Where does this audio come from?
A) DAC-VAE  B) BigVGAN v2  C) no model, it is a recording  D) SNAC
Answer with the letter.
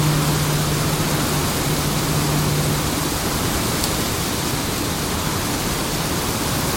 C